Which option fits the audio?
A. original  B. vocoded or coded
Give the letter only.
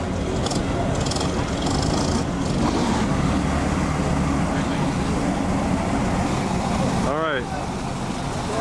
A